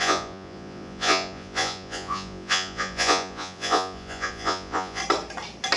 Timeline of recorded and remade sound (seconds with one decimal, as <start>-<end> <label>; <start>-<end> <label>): 0.0-5.0 remade; 5.0-5.8 recorded